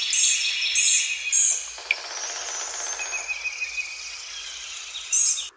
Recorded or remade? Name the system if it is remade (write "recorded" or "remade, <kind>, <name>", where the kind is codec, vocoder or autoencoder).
recorded